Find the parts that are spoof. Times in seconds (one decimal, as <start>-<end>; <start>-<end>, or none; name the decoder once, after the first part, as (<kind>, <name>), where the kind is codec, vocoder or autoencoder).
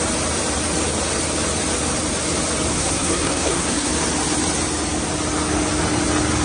2.7-3.9 (codec, SNAC)